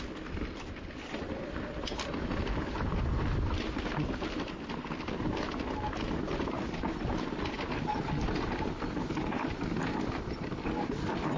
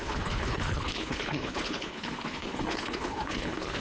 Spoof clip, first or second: second